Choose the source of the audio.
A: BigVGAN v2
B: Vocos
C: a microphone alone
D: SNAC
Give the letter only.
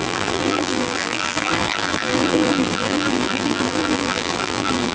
A